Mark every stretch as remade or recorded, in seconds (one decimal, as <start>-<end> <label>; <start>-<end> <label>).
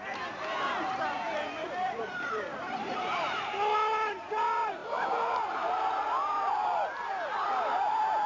0.0-1.6 recorded; 1.6-3.5 remade; 3.5-4.8 recorded; 4.8-5.9 remade; 5.9-8.3 recorded